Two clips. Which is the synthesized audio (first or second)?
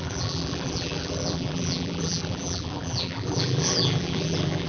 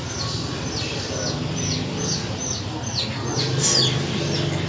first